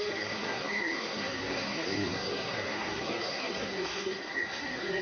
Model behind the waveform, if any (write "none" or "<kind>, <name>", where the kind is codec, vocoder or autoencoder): codec, SNAC